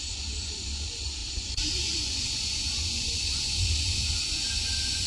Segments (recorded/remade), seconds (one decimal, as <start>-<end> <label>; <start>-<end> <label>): 0.0-5.1 remade